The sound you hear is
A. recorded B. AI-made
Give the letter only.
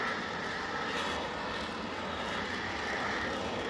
A